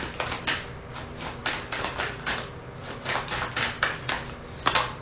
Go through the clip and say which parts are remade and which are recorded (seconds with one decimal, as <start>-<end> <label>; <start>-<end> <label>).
0.0-1.4 recorded; 1.4-2.4 remade; 2.4-5.0 recorded